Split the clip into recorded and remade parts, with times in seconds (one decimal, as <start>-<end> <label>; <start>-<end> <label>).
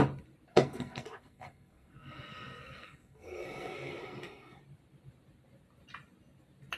0.0-0.5 recorded; 0.5-4.6 remade; 4.6-6.8 recorded